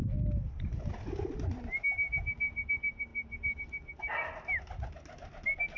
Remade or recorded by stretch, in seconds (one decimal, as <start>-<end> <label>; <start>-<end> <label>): 0.0-5.8 recorded